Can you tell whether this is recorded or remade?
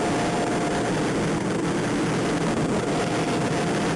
recorded